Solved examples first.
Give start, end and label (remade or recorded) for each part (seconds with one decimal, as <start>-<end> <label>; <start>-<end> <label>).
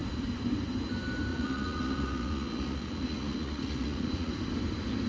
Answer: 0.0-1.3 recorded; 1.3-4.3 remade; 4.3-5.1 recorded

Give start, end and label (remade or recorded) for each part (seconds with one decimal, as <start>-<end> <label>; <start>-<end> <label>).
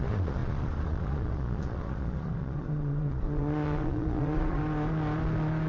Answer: 0.0-4.6 remade; 4.6-5.7 recorded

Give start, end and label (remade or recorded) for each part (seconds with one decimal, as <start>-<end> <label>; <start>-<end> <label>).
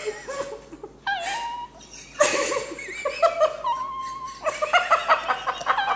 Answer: 0.0-6.0 recorded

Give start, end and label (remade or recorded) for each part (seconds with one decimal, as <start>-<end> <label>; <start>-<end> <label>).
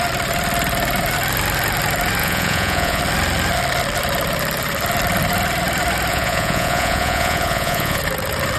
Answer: 0.0-2.2 recorded; 2.2-3.0 remade; 3.0-6.1 recorded; 6.1-8.0 remade; 8.0-8.6 recorded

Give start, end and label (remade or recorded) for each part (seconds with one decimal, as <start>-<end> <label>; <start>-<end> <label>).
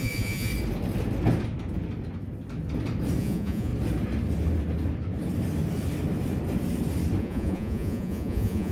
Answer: 0.0-0.5 remade; 0.5-3.2 recorded; 3.2-3.7 remade; 3.7-7.2 recorded; 7.2-8.7 remade